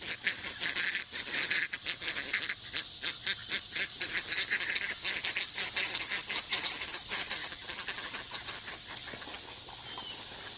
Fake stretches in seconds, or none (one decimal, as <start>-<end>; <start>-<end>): 7.4-8.2